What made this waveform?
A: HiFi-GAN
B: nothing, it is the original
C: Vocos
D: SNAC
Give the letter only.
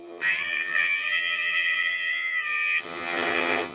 A